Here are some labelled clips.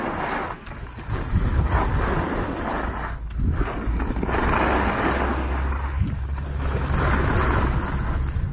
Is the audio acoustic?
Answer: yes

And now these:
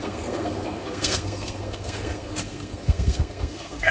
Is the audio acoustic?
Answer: no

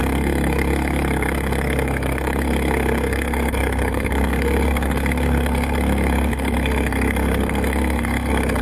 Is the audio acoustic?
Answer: no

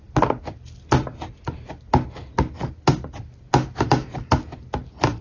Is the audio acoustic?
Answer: yes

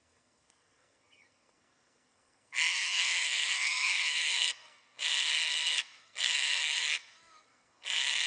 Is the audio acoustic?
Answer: no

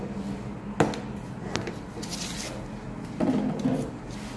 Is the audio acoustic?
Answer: yes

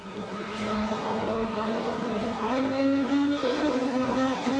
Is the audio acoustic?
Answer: no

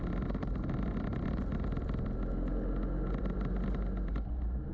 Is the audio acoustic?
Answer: yes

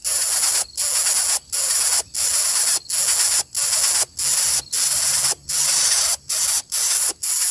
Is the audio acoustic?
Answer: yes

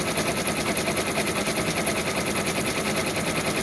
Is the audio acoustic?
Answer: yes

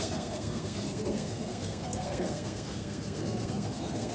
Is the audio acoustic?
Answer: no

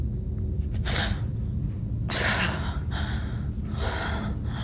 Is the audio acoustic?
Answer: yes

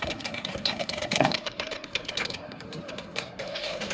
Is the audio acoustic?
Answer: no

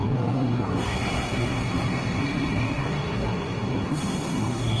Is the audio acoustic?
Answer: no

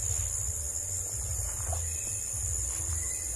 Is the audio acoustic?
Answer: yes